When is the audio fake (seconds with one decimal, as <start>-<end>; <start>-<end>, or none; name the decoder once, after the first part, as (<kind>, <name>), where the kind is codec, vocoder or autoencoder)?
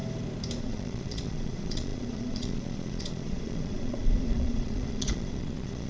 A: 0.6-5.9 (vocoder, Vocos)